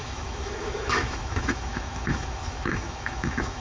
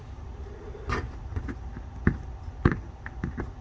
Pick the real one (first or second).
second